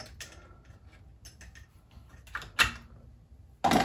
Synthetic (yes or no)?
no